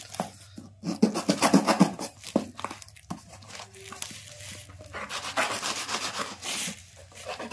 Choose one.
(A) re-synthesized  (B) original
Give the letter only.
B